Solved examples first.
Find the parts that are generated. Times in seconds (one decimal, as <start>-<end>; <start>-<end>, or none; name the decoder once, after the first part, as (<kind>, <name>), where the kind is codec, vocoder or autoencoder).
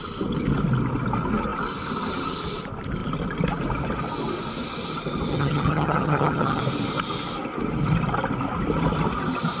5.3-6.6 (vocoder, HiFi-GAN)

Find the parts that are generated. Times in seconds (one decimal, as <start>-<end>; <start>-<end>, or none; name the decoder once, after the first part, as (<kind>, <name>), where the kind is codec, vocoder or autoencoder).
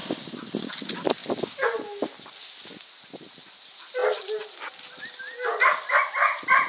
none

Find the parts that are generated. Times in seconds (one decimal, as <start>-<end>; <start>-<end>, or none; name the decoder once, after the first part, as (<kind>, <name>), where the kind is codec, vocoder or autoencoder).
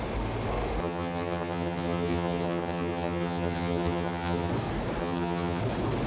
0.8-4.5 (vocoder, HiFi-GAN); 5.0-5.6